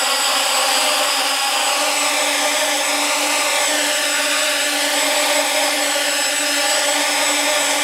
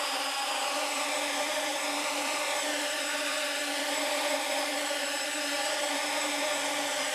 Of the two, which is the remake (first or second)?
second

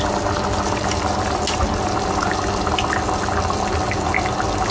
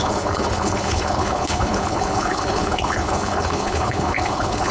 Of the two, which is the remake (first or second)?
second